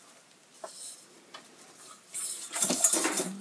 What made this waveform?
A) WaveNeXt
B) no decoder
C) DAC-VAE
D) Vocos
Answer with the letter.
B